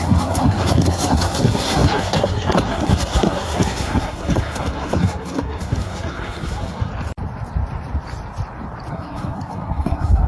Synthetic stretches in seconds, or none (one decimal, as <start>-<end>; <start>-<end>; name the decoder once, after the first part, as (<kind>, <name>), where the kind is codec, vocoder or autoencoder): 0.0-6.9 (codec, SNAC); 8.9-10.3